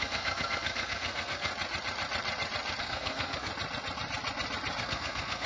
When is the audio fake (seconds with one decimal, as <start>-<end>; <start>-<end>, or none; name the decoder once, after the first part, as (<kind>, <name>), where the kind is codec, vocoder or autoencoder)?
0.0-1.5 (codec, SNAC); 2.8-3.5; 4.8-5.5